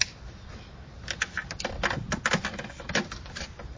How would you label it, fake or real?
real